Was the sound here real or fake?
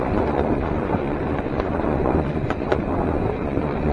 fake